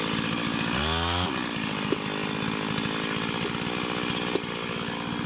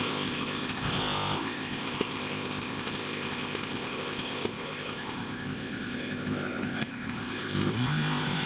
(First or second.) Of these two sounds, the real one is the first